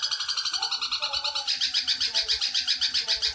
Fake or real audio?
real